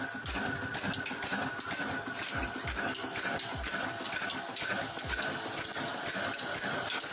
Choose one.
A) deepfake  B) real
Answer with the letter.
B